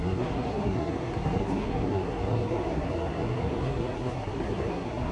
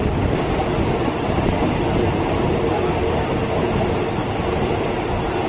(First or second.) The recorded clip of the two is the second